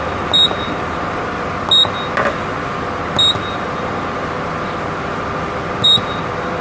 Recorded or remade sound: recorded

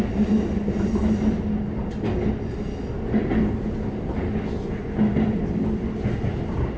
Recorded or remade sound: recorded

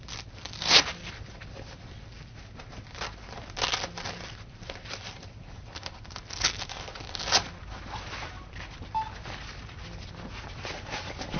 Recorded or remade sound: recorded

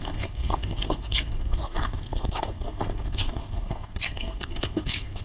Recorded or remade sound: remade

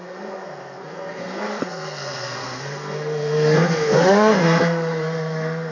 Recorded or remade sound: remade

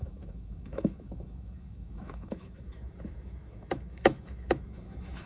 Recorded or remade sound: remade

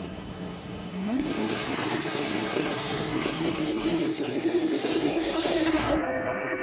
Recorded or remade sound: remade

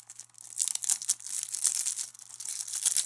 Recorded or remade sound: recorded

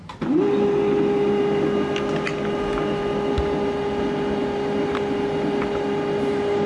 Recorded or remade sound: recorded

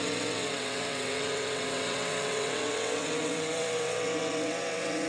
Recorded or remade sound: remade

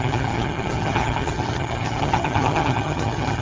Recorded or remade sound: remade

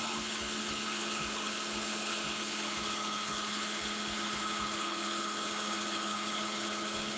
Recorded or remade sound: remade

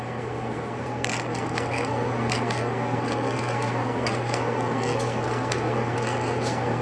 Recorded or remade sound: remade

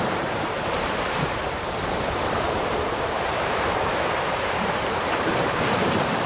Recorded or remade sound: remade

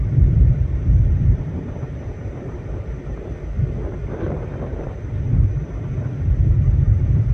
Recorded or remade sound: remade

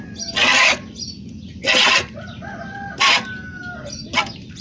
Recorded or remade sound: recorded